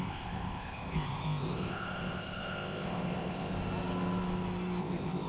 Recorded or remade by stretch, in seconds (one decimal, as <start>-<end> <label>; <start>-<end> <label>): 0.0-3.5 remade; 3.5-4.8 recorded; 4.8-5.3 remade